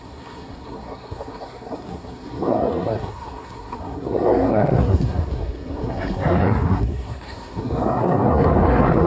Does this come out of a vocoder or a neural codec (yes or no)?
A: yes